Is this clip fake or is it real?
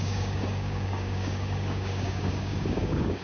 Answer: fake